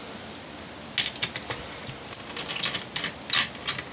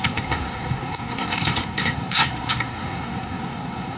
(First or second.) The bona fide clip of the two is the first